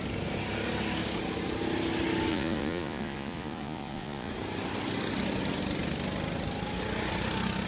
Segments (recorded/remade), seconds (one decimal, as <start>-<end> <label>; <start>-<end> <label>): 0.0-2.3 recorded; 2.3-4.3 remade; 4.3-7.7 recorded